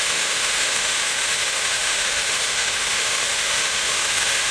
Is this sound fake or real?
fake